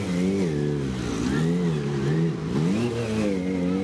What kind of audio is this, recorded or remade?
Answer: recorded